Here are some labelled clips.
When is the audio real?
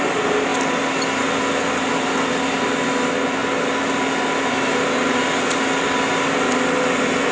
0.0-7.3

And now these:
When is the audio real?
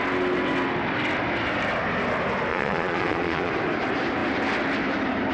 0.0-2.5; 3.5-5.3